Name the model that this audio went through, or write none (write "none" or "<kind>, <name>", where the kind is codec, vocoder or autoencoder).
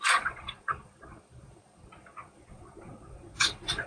vocoder, Vocos